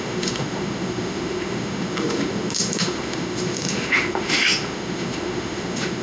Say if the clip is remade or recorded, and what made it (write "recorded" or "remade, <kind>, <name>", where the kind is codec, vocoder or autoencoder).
remade, autoencoder, DAC-VAE